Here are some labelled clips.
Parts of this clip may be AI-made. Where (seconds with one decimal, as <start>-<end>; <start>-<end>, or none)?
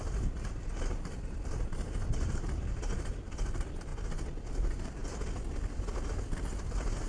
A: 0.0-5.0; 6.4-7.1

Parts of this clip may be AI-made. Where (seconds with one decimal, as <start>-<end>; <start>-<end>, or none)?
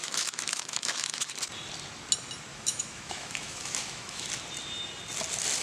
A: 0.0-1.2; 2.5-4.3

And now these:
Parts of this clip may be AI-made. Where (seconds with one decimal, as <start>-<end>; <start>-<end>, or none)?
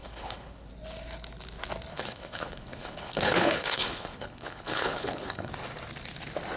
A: 0.0-0.7; 1.9-5.5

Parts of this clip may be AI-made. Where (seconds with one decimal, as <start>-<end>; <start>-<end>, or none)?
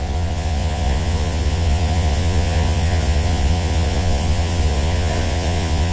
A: 0.0-5.9